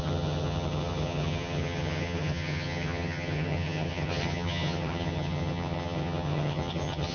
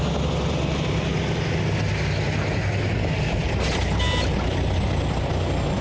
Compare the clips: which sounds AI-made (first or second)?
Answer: first